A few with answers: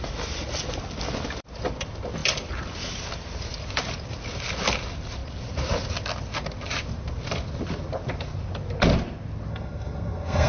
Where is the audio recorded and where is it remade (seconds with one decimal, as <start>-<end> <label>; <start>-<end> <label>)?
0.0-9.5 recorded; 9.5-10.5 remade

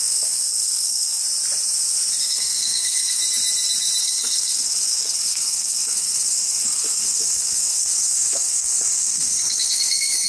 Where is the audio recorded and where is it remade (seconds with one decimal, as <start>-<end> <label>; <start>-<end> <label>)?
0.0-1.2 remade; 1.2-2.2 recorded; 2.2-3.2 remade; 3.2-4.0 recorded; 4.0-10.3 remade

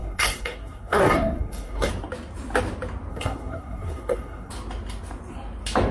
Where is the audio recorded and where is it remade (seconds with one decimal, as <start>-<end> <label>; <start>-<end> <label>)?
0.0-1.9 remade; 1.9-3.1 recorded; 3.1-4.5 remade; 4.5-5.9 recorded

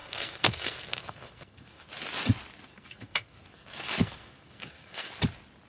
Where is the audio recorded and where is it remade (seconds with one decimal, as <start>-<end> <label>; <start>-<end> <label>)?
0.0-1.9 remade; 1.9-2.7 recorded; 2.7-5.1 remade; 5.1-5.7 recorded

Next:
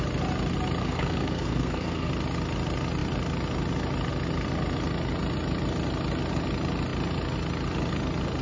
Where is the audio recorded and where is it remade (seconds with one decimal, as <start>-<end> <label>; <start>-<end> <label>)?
0.0-0.8 recorded; 0.8-2.1 remade; 2.1-8.4 recorded

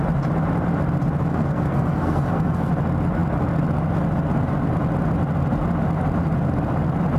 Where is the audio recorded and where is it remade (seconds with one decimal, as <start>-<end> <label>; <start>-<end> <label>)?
0.0-1.3 recorded; 1.3-2.7 remade; 2.7-7.2 recorded